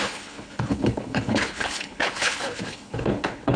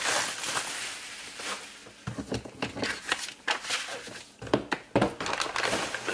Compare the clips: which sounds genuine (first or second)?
second